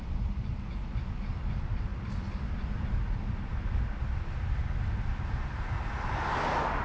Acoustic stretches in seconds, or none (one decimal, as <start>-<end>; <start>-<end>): 0.0-6.8